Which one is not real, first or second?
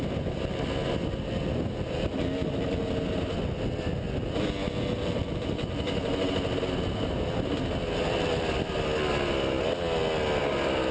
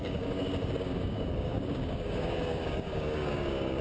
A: second